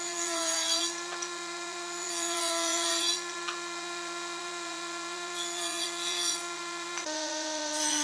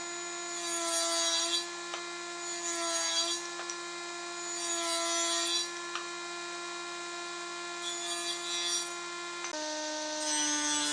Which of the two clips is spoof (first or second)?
first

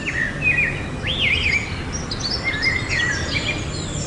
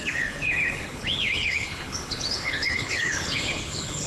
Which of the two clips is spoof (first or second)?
second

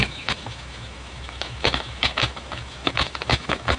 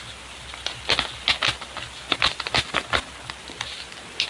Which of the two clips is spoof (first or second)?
first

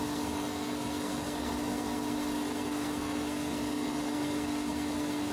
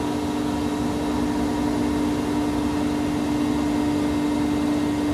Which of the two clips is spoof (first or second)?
first